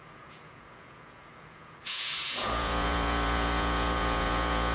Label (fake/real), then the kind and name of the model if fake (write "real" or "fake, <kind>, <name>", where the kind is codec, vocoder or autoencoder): fake, vocoder, Vocos